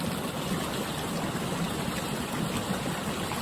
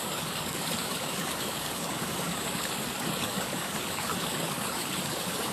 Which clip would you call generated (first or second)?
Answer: second